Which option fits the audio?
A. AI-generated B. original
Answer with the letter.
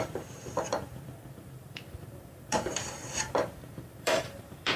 A